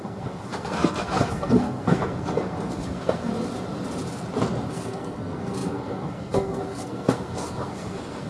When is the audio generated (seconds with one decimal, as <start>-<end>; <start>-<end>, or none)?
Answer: 0.0-3.3; 4.7-8.3